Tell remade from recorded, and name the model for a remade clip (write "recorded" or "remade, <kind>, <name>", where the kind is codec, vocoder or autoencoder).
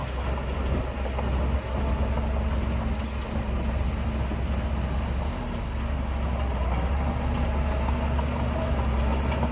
recorded